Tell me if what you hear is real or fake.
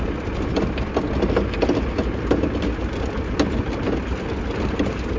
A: real